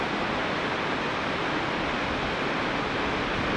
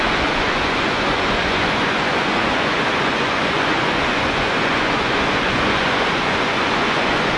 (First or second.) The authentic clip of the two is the first